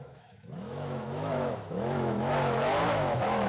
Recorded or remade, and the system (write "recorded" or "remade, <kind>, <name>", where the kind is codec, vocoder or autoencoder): remade, autoencoder, DAC-VAE